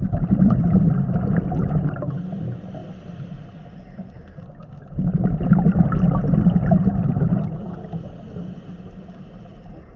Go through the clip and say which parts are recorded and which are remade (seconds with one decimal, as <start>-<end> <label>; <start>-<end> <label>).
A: 0.0-10.0 recorded